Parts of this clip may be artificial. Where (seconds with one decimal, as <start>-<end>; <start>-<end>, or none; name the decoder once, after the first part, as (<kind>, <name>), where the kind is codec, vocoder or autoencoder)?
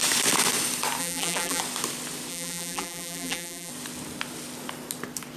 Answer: 1.0-1.6 (vocoder, BigVGAN v2); 2.3-3.7